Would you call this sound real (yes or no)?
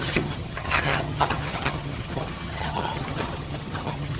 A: no